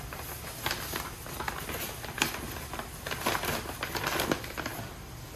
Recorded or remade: recorded